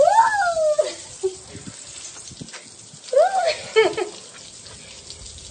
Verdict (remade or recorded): recorded